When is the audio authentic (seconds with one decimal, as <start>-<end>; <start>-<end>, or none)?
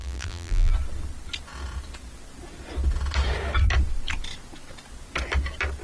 0.7-5.8